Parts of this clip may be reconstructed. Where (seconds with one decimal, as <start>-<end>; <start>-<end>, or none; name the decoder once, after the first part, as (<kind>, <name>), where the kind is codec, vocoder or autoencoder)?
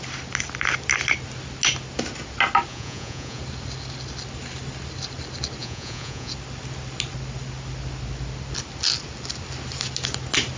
2.7-3.4 (vocoder, Vocos); 5.6-6.3